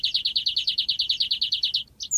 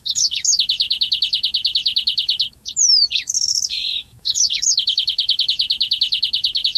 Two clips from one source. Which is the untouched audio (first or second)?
first